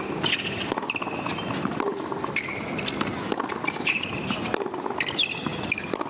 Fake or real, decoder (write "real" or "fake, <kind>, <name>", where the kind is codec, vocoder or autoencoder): real